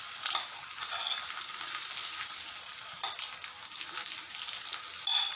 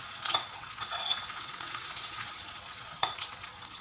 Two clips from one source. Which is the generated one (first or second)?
second